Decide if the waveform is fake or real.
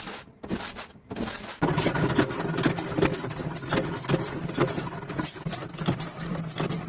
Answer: real